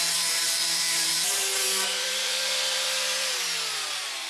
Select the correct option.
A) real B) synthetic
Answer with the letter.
B